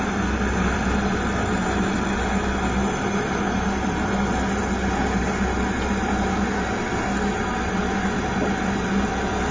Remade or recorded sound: recorded